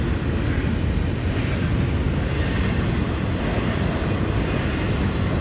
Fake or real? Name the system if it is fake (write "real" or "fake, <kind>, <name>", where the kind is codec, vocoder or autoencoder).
real